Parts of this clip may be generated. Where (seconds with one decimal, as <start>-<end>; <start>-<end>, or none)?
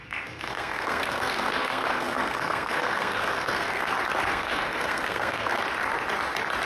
0.0-3.9; 4.3-5.6